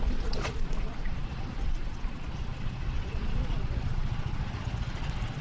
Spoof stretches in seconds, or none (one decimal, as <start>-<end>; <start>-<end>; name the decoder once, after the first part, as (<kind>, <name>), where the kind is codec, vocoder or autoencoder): 0.0-5.4 (vocoder, Vocos)